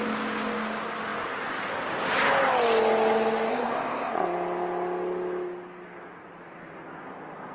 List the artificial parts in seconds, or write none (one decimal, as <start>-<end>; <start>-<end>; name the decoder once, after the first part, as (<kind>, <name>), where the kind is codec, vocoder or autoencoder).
3.5-4.1 (codec, ZipCodec)